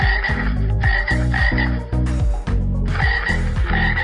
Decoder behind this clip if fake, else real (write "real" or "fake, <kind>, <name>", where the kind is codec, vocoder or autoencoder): fake, vocoder, BigVGAN v2